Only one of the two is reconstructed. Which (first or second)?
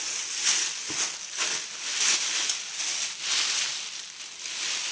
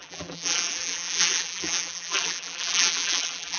second